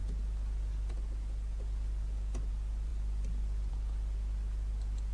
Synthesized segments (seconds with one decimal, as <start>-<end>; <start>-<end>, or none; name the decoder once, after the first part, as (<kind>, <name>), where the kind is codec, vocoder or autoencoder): none